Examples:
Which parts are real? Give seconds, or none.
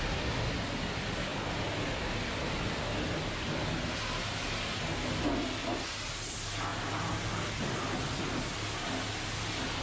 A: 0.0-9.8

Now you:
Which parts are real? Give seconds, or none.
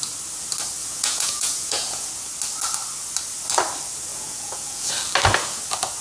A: 0.0-0.8; 2.1-4.1; 4.9-6.0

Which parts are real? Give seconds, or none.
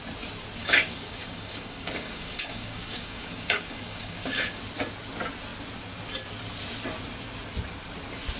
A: 0.0-0.6; 4.6-8.4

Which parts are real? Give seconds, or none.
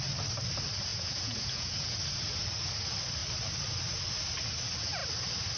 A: 0.0-0.9; 2.0-5.6